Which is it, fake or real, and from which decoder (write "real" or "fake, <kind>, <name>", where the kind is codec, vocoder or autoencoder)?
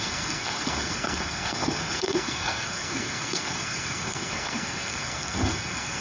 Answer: fake, codec, SNAC